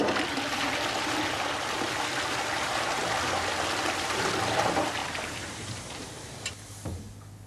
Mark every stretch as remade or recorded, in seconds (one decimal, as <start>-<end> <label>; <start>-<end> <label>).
0.0-5.0 recorded; 5.0-6.5 remade; 6.5-7.5 recorded